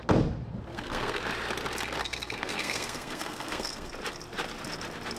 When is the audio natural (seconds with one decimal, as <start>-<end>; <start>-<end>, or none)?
0.0-0.7; 1.2-2.0; 3.9-5.2